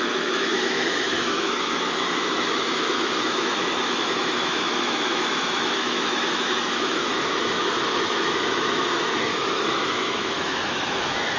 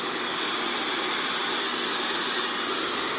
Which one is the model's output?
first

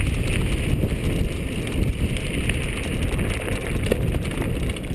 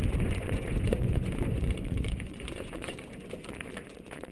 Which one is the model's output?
second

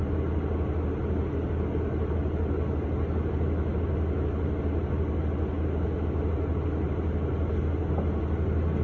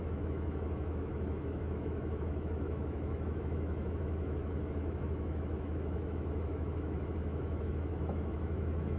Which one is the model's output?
second